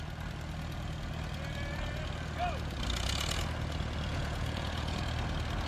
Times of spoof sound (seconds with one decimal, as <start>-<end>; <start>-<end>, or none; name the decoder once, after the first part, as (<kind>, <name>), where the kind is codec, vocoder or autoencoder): 4.1-5.0 (vocoder, Vocos)